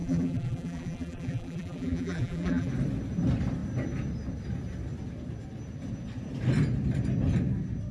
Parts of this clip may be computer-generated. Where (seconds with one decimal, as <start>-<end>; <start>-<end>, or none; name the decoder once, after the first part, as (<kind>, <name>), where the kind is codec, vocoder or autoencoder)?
0.0-2.7 (vocoder, BigVGAN v2)